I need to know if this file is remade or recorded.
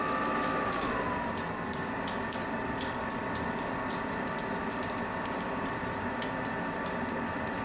recorded